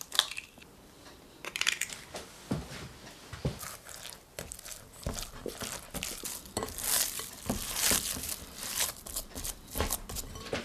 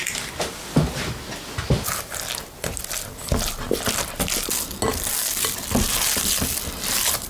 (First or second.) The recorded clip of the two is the second